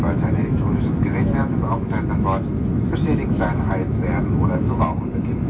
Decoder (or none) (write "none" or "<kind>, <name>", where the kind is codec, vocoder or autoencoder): autoencoder, DAC-VAE